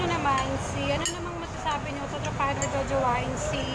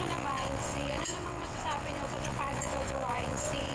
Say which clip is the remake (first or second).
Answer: second